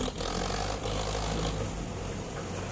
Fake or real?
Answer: real